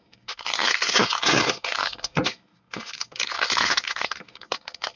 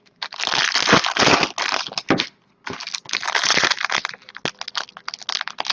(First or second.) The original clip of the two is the second